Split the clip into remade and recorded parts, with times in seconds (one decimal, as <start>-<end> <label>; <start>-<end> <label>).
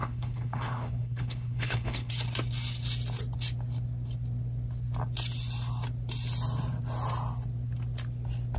0.0-2.1 remade; 2.1-8.6 recorded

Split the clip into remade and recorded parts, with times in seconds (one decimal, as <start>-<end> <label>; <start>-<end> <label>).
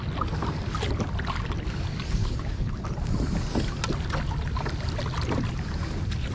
0.0-2.2 recorded; 2.2-2.7 remade; 2.7-6.3 recorded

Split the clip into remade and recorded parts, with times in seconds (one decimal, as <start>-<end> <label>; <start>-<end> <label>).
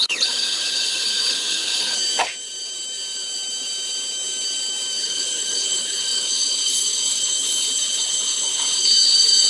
0.0-2.0 remade; 2.0-5.0 recorded; 5.0-9.5 remade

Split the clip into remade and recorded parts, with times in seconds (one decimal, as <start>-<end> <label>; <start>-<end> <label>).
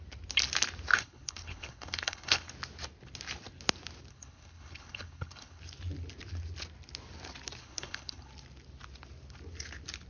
0.0-0.9 recorded; 0.9-2.5 remade; 2.5-4.1 recorded; 4.1-5.6 remade; 5.6-7.6 recorded; 7.6-8.3 remade; 8.3-10.1 recorded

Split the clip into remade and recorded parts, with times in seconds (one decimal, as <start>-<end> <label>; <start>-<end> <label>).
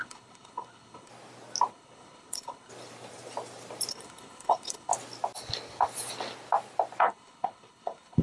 0.0-1.1 remade; 1.1-1.7 recorded; 1.7-2.7 remade; 2.7-3.9 recorded; 3.9-4.9 remade; 4.9-7.0 recorded; 7.0-8.2 remade